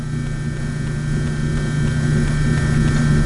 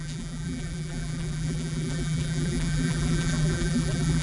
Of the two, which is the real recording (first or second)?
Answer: first